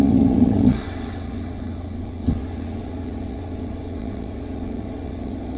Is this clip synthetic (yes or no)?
yes